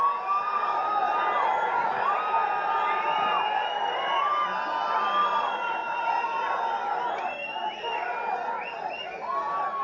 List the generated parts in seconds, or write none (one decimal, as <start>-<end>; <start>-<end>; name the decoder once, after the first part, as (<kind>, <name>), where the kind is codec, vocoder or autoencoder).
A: none